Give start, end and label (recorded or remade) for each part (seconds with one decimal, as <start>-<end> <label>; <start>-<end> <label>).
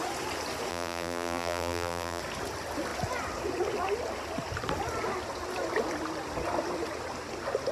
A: 0.0-0.7 recorded; 0.7-2.2 remade; 2.2-7.7 recorded